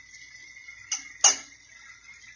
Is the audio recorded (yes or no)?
yes